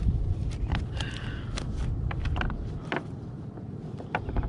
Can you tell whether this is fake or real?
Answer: fake